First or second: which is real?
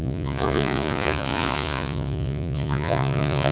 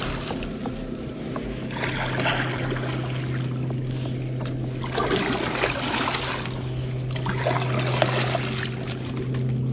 second